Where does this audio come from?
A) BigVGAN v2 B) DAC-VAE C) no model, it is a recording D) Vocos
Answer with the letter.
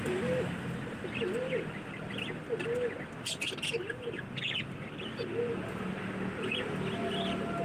C